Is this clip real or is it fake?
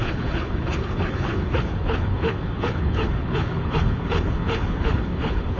fake